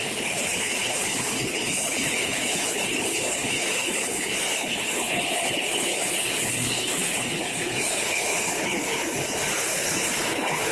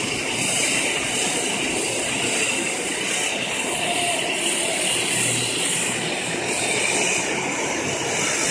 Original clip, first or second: second